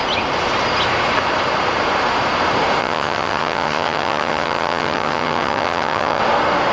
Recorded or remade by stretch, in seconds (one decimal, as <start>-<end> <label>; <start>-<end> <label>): 0.0-2.8 recorded; 2.8-6.2 remade; 6.2-6.7 recorded